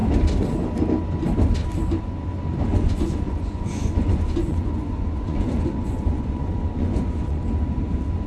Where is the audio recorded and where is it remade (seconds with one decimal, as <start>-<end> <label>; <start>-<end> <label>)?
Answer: 0.0-2.7 recorded; 2.7-7.4 remade; 7.4-8.3 recorded